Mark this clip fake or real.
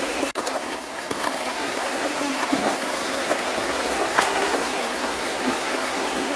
fake